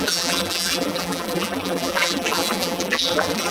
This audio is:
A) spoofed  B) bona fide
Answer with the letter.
A